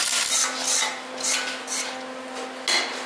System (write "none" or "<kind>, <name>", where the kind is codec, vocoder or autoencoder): none